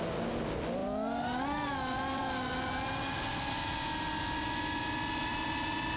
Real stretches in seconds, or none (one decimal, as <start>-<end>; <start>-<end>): 0.0-6.0